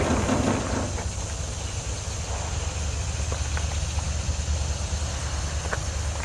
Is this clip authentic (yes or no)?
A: yes